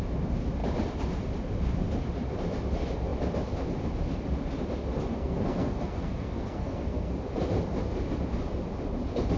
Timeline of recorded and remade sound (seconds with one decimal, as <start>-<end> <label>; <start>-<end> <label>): 0.0-5.1 recorded; 5.1-7.1 remade; 7.1-9.4 recorded